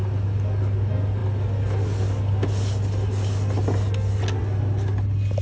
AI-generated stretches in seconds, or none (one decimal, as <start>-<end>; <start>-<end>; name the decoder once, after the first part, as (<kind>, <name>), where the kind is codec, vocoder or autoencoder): none